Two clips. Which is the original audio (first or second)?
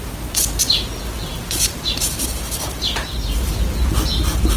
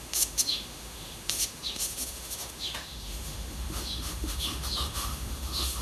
first